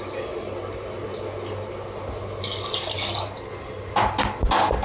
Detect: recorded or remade recorded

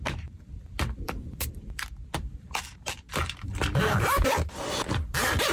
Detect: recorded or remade remade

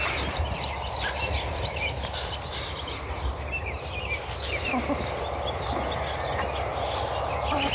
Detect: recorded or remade recorded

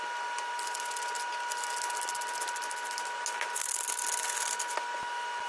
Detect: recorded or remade recorded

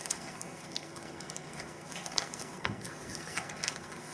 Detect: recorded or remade remade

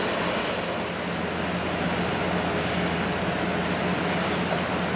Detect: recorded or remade recorded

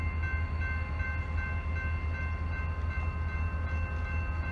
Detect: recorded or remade recorded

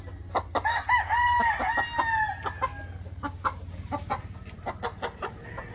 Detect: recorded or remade recorded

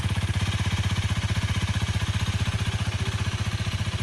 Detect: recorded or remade recorded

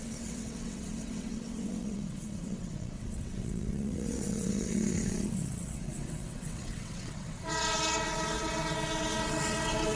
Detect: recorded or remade remade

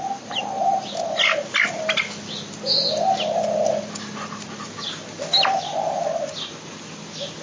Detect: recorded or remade recorded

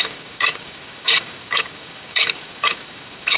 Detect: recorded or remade remade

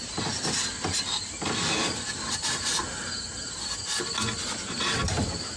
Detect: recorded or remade recorded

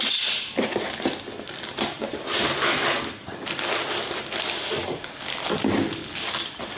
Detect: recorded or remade recorded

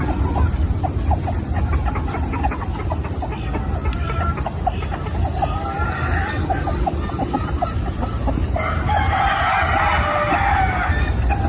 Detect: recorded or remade recorded